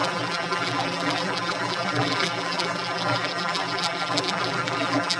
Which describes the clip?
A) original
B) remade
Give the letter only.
B